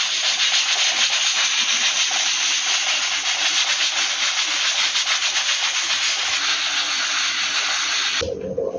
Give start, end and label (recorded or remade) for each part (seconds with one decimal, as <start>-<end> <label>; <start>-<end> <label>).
0.0-8.8 recorded